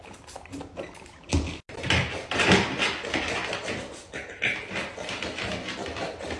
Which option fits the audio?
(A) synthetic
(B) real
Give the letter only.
B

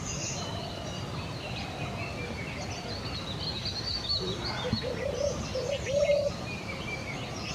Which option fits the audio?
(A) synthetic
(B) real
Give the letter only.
B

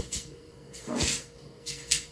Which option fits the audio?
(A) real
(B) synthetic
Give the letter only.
B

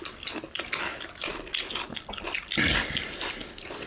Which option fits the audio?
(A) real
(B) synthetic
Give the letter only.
A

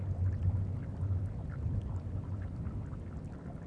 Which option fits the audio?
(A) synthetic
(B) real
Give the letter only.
B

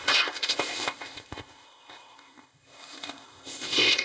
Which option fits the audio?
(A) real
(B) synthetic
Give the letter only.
B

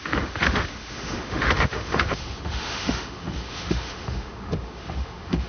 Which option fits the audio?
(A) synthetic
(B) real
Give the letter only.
A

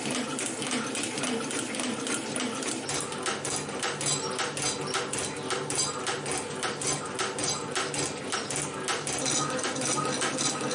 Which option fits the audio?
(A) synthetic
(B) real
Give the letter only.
B